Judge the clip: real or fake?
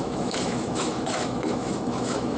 fake